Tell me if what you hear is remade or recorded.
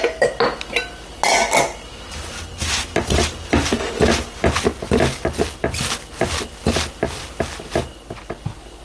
recorded